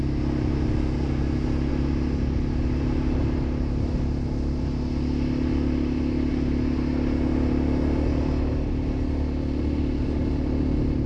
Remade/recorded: recorded